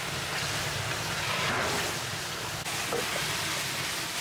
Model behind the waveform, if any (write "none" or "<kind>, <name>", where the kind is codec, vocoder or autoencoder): none